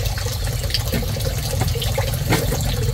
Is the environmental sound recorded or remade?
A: recorded